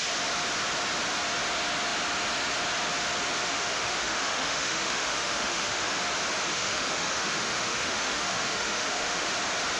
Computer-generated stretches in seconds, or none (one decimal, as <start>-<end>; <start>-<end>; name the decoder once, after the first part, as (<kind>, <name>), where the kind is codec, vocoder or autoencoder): 3.4-5.9 (autoencoder, DAC-VAE); 6.5-9.3